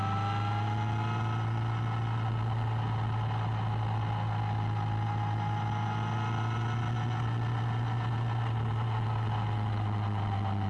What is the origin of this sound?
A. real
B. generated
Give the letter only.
A